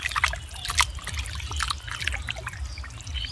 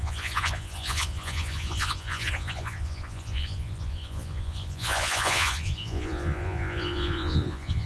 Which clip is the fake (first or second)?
second